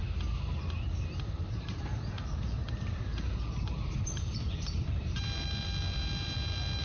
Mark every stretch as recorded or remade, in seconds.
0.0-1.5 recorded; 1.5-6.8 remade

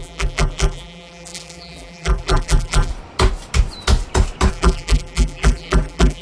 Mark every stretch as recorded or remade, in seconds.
0.0-2.9 remade; 2.9-4.5 recorded; 4.5-6.2 remade

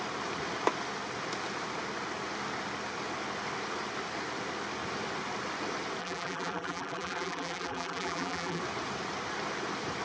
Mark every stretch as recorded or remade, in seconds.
0.0-6.0 recorded; 6.0-8.6 remade; 8.6-10.0 recorded

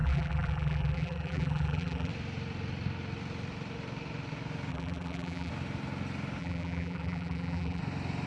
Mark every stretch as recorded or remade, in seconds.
0.0-2.1 remade; 2.1-4.7 recorded; 4.7-5.5 remade; 5.5-6.4 recorded; 6.4-7.8 remade; 7.8-8.3 recorded

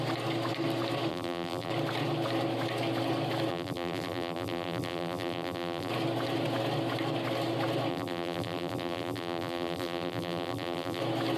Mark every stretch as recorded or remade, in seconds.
0.0-1.1 recorded; 1.1-1.7 remade; 1.7-3.5 recorded; 3.5-5.9 remade; 5.9-7.9 recorded; 7.9-11.0 remade; 11.0-11.4 recorded

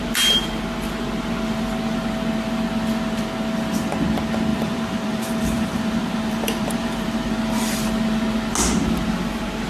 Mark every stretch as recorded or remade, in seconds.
0.0-4.5 recorded; 4.5-7.8 remade; 7.8-9.7 recorded

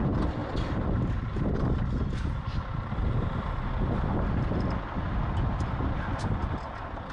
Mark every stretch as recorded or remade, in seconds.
0.0-0.4 recorded; 0.4-3.4 remade; 3.4-7.1 recorded